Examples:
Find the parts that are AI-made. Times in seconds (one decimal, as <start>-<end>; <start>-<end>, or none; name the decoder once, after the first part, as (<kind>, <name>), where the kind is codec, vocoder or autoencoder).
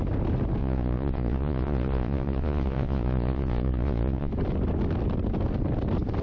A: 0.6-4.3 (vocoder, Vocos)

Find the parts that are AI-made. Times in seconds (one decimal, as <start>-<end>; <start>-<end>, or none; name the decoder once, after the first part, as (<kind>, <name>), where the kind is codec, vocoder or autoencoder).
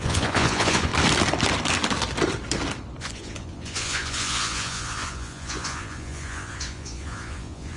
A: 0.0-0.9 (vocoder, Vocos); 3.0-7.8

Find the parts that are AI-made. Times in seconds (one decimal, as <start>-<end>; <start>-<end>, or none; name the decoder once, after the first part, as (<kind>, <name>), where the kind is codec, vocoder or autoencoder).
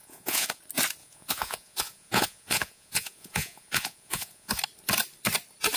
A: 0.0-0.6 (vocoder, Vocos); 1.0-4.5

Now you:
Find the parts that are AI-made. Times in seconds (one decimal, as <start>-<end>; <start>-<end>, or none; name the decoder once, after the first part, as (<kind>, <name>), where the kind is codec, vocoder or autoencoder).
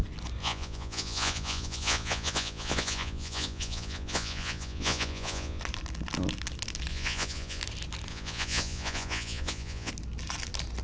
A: 0.4-5.6 (vocoder, Vocos); 6.9-7.6; 8.1-9.9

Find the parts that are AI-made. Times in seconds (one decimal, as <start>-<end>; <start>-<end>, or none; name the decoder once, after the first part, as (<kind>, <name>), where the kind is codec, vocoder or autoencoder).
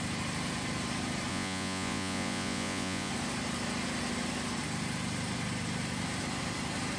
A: 1.3-3.1 (vocoder, Vocos)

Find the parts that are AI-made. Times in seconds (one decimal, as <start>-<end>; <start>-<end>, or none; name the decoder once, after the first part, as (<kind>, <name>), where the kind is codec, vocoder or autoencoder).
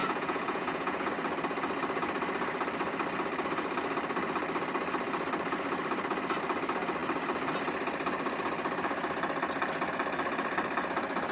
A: 0.0-1.1 (vocoder, Vocos)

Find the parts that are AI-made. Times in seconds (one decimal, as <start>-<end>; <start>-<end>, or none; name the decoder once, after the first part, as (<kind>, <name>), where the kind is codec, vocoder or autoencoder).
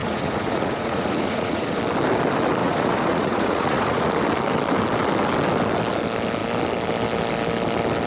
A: 0.0-1.8 (vocoder, Vocos); 2.6-4.1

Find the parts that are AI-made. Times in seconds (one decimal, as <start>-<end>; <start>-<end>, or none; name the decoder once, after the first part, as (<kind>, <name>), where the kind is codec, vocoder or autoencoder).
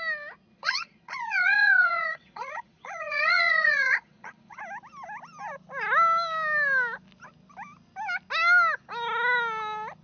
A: 0.5-4.6 (vocoder, Vocos)